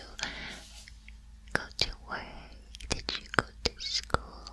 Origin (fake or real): real